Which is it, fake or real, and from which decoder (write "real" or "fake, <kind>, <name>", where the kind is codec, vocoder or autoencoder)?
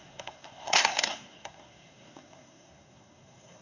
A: fake, codec, SNAC